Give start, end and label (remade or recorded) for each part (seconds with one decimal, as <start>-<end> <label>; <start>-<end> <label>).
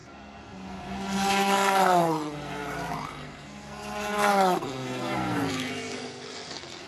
0.0-6.9 remade